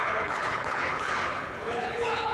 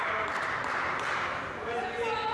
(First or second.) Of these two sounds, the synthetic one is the first